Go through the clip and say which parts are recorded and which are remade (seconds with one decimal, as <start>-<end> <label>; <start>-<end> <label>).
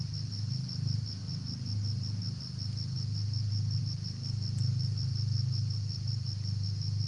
0.0-7.1 recorded